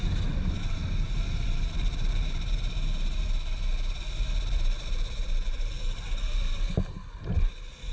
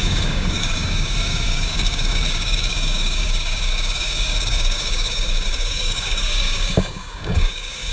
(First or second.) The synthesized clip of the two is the second